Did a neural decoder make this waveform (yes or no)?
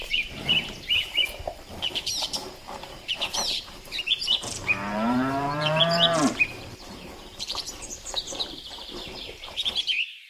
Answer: yes